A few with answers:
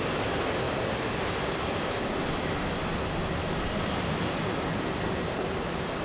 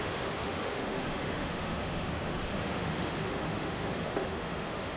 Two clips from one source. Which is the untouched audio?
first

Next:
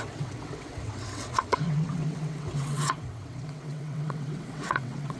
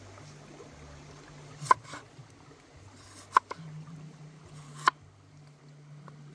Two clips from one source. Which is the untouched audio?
second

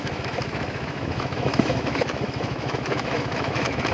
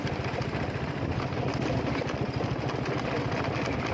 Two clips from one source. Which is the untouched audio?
second